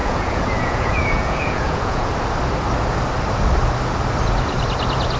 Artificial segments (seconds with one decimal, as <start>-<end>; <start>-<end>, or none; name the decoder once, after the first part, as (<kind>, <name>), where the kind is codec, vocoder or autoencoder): 0.0-2.1 (vocoder, Vocos)